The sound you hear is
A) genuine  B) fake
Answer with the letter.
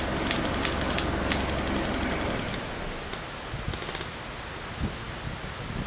A